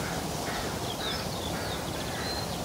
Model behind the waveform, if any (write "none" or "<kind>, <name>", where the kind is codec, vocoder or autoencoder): none